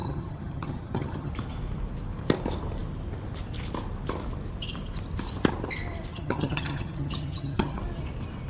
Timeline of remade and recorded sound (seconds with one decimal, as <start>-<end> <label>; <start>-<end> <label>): 0.0-1.3 remade; 1.3-6.1 recorded; 6.1-7.8 remade; 7.8-8.5 recorded